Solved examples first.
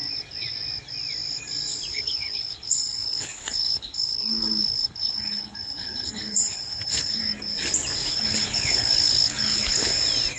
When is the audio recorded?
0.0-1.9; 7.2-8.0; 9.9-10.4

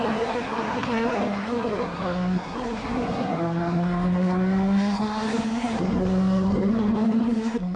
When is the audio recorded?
none

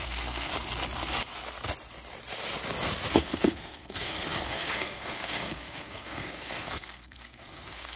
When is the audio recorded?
0.5-3.1

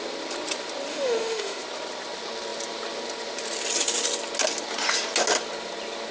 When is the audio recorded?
0.0-0.9; 1.6-6.1

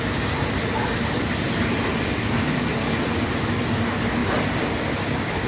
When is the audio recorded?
0.0-5.5

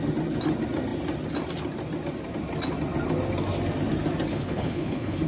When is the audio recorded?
0.0-4.3

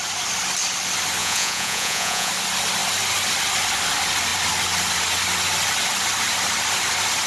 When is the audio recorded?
0.0-1.2; 2.3-7.3

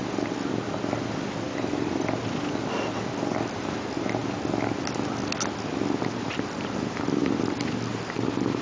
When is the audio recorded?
0.0-8.6